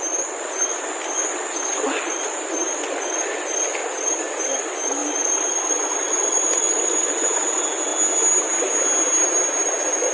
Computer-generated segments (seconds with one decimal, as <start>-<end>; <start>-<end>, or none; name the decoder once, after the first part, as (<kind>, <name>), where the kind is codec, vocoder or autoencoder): 5.0-7.1 (vocoder, BigVGAN v2)